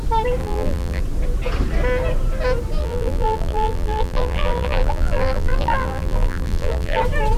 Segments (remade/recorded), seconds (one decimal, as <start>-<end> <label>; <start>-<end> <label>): 0.0-0.4 recorded; 0.4-1.0 remade; 1.0-2.8 recorded; 2.8-7.0 remade; 7.0-7.4 recorded